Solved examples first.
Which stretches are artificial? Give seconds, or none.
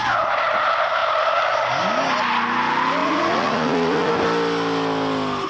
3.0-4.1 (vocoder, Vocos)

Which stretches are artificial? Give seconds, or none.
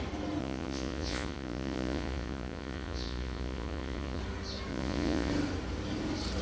0.4-4.2 (vocoder, Vocos); 4.7-5.3